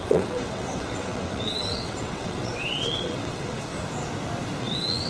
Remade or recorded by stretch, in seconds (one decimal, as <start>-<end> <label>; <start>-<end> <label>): 0.0-3.7 remade; 3.7-4.6 recorded; 4.6-5.1 remade